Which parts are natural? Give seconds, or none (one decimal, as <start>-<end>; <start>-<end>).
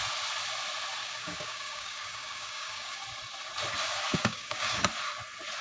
0.0-1.0; 3.0-4.1; 4.8-5.6